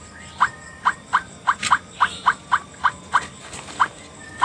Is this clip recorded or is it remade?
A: recorded